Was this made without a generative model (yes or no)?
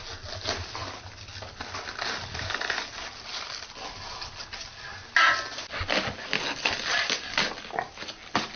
yes